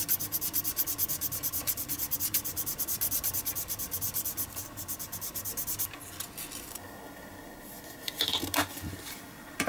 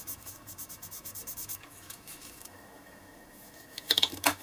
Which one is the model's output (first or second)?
second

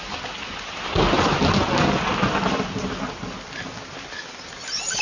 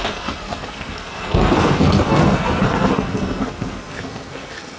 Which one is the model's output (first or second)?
second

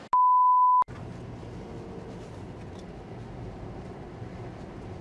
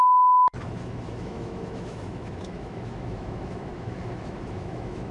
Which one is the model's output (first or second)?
second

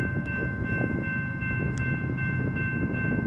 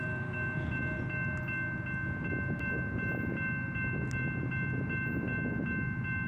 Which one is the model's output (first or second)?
first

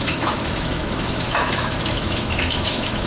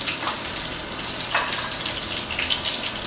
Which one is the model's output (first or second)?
first